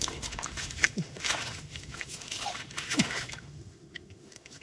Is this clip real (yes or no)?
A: no